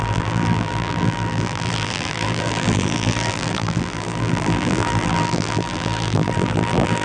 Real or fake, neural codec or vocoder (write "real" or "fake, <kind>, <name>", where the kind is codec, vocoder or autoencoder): fake, vocoder, BigVGAN v2